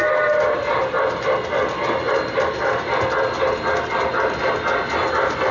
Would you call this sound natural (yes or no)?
yes